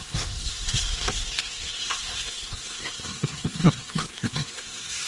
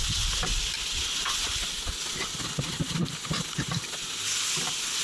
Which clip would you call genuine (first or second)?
second